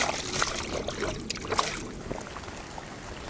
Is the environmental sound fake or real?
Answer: real